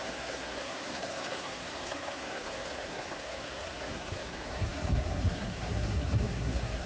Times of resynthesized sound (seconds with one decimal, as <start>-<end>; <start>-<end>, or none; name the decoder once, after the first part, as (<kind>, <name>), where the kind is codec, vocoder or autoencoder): 0.0-6.9 (codec, SNAC)